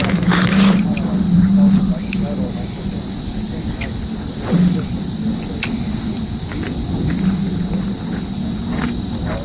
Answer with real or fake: real